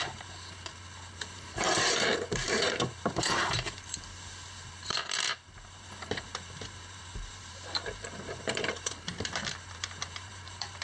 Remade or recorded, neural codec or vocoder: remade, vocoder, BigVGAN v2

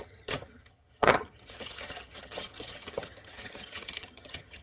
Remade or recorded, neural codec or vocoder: remade, vocoder, HiFi-GAN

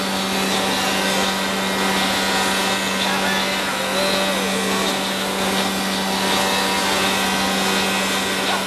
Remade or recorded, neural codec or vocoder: recorded